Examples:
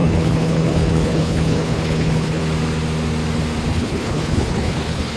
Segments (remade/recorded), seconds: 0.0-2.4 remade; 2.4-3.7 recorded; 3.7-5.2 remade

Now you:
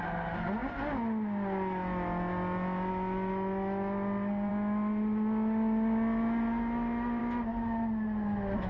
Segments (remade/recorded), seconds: 0.0-8.7 recorded

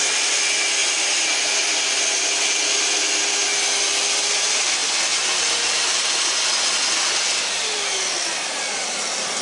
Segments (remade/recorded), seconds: 0.0-9.4 recorded

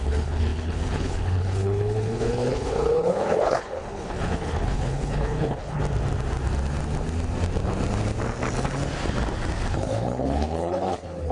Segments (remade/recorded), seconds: 0.0-5.8 remade; 5.8-9.7 recorded; 9.7-11.3 remade

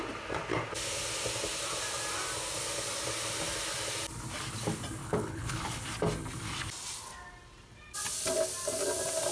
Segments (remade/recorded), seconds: 0.0-5.0 recorded; 5.0-5.8 remade; 5.8-9.3 recorded

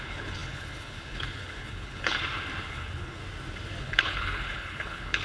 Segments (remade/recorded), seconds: 0.0-2.2 remade; 2.2-2.7 recorded; 2.7-3.2 remade; 3.2-3.8 recorded; 3.8-5.2 remade

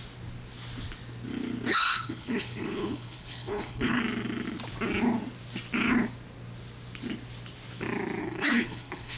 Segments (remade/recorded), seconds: 0.0-1.7 recorded; 1.7-4.0 remade; 4.0-8.2 recorded; 8.2-9.2 remade

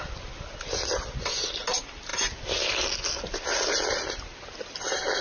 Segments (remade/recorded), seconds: 0.0-5.2 recorded